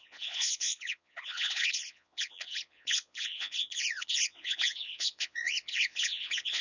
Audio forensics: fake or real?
fake